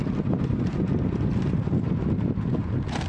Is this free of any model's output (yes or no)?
yes